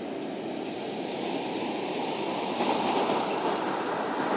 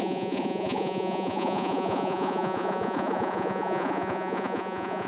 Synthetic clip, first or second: second